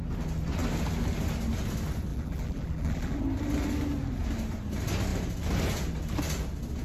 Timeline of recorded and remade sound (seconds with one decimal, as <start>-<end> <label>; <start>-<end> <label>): 0.0-2.1 recorded; 2.1-3.2 remade; 3.2-6.8 recorded